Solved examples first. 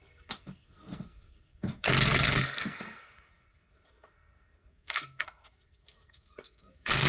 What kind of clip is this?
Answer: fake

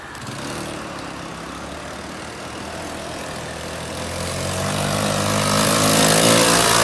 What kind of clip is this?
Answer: real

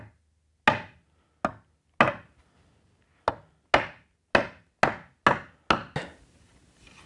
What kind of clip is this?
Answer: real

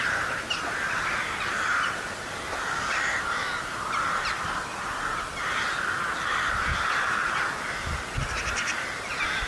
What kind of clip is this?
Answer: real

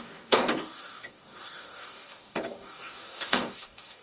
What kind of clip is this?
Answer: fake